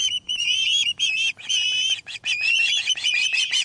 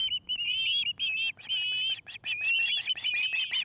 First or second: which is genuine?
second